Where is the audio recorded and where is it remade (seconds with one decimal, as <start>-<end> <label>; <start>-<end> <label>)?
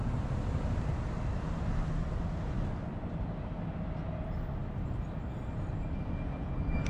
0.0-6.9 recorded